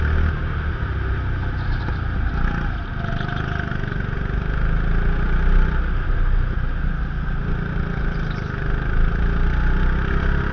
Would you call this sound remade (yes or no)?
no